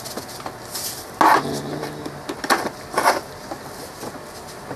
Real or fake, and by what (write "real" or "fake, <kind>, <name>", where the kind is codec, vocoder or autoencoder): real